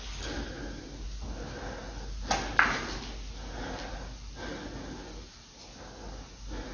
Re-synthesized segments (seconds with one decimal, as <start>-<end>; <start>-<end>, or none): none